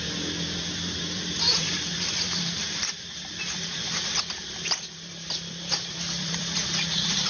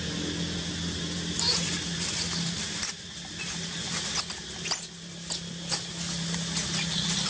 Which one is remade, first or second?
first